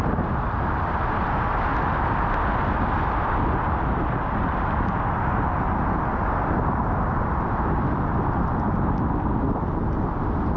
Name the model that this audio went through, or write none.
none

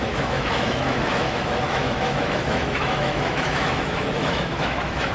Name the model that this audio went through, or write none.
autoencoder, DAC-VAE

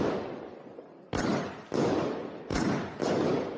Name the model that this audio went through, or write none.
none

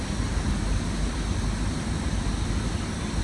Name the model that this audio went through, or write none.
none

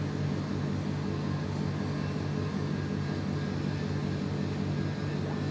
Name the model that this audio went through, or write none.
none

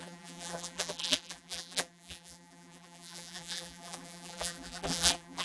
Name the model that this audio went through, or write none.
vocoder, BigVGAN v2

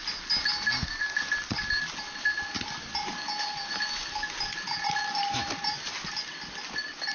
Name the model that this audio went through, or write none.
none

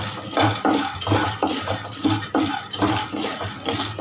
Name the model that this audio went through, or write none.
none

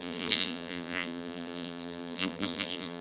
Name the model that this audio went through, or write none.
vocoder, BigVGAN v2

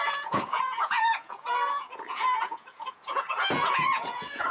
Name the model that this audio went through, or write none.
vocoder, Vocos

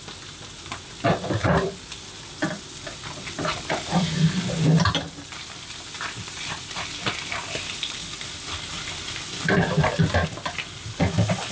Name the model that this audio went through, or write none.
vocoder, BigVGAN v2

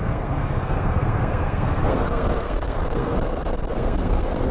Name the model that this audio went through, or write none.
codec, SNAC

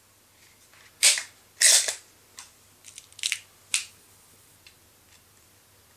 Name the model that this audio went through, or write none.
none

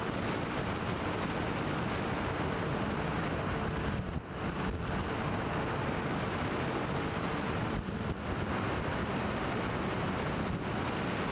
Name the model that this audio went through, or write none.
none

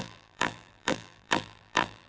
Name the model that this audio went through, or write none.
vocoder, BigVGAN v2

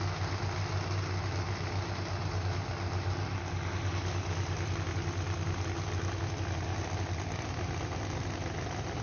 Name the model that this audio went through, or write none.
none